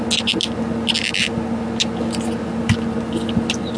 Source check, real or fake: real